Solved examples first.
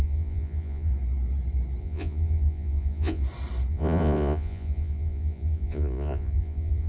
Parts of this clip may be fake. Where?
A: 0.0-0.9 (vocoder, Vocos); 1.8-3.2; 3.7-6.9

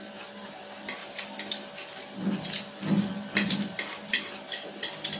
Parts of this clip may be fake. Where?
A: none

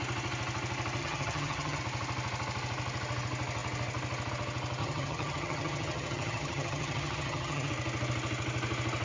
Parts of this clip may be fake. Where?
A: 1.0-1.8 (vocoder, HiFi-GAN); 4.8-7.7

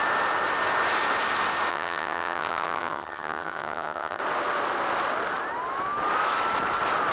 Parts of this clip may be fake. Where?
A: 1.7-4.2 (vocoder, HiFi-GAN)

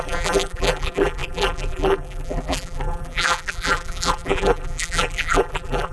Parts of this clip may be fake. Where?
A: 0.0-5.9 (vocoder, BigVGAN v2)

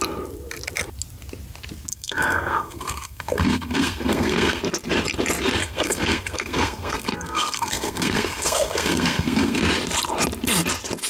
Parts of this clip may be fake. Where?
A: 1.9-4.6 (codec, SNAC); 5.6-9.6